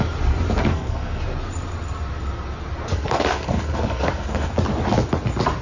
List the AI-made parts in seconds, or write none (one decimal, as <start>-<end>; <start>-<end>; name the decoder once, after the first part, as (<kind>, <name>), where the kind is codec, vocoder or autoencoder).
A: 0.7-1.2 (codec, SNAC); 2.9-4.5